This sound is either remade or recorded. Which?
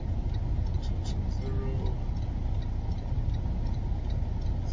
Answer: recorded